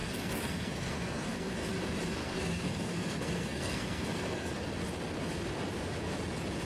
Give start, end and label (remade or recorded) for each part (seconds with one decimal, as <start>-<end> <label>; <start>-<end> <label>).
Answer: 0.0-1.7 remade; 1.7-2.2 recorded; 2.2-4.5 remade; 4.5-6.7 recorded